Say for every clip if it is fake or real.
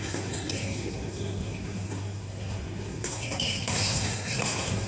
fake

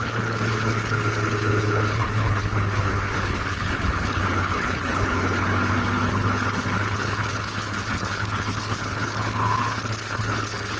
fake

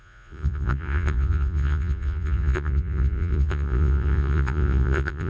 fake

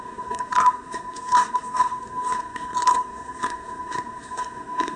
fake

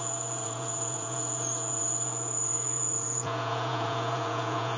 fake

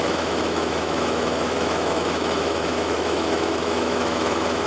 fake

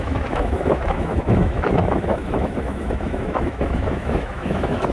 fake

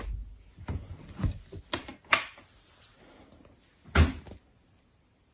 real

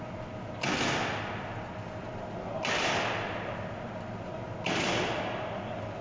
real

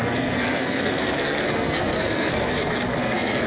fake